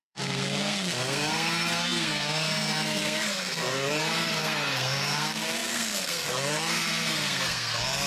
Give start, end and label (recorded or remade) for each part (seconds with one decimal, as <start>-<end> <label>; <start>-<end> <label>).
0.0-8.1 remade